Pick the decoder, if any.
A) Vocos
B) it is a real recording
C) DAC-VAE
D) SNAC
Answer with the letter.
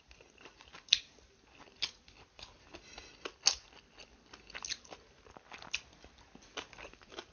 B